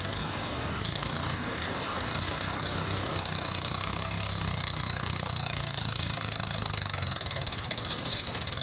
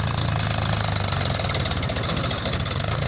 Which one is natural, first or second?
second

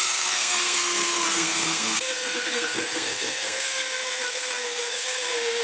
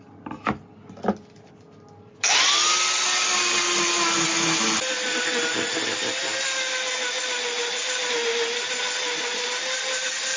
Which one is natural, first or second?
second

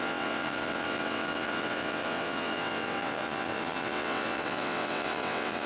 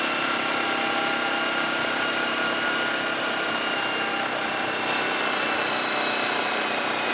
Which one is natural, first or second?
second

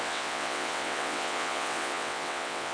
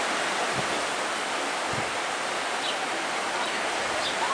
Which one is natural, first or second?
second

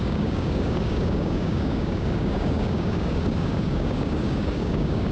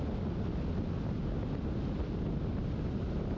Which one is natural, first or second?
second